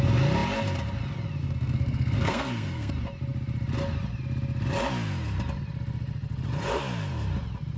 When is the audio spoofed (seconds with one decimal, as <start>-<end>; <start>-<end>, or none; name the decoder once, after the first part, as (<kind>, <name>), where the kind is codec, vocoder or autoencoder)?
1.4-2.9 (codec, SNAC)